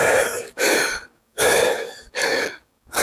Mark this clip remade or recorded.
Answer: remade